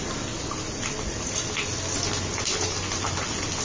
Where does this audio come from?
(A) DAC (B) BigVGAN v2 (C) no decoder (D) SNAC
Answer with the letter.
C